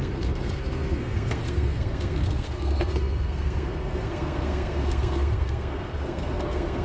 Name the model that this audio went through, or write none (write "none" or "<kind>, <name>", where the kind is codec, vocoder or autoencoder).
codec, SNAC